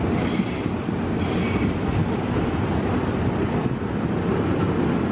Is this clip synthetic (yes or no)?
no